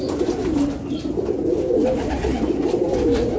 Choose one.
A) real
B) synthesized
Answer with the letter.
A